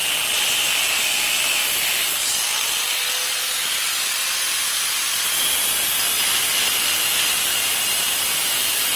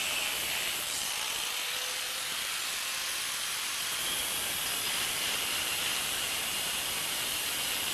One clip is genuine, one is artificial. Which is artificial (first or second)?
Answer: second